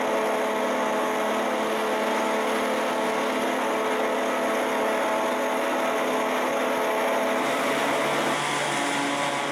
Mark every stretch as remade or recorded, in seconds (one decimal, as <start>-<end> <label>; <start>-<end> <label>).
0.0-9.5 recorded